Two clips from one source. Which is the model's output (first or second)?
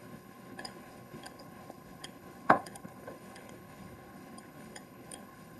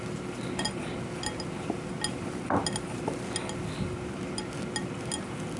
first